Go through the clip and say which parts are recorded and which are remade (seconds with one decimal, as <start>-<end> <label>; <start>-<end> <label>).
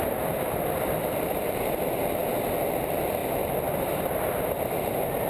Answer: 0.0-1.0 recorded; 1.0-1.9 remade; 1.9-5.3 recorded